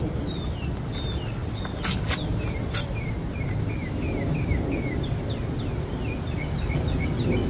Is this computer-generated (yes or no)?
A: no